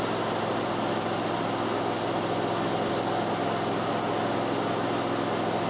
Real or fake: real